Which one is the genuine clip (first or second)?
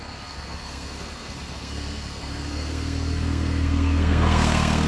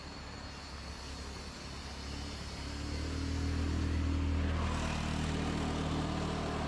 second